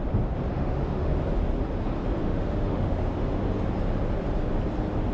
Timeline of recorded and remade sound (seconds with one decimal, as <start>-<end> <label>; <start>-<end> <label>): 0.0-0.5 recorded; 0.5-1.2 remade; 1.2-2.2 recorded; 2.2-3.0 remade; 3.0-5.1 recorded